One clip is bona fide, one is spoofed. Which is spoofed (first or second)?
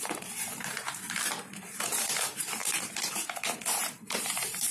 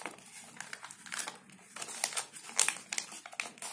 first